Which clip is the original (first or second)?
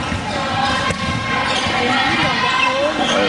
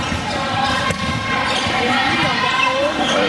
first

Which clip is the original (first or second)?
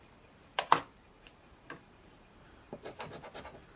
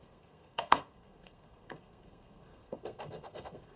first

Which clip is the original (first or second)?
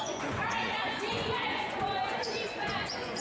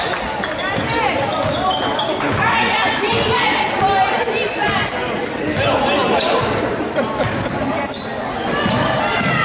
second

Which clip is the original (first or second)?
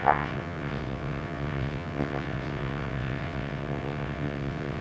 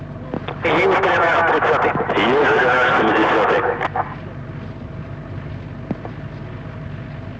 second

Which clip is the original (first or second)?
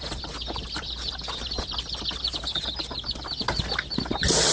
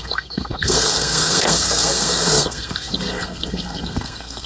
first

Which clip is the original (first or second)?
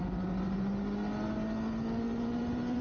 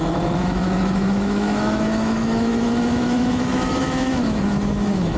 first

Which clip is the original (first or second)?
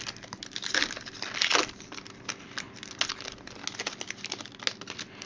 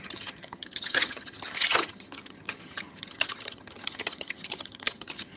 first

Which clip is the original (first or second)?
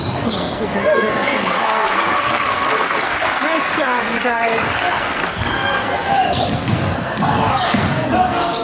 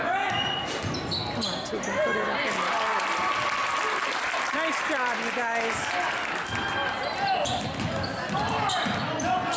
second